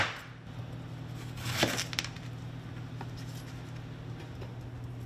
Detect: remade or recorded recorded